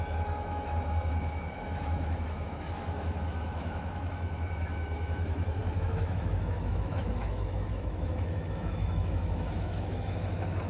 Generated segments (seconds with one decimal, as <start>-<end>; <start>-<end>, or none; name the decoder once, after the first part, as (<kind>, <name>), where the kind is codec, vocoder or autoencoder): 0.0-10.7 (autoencoder, DAC-VAE)